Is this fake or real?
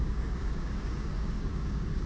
fake